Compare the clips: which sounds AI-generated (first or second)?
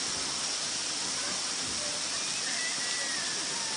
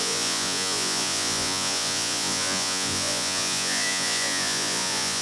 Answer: second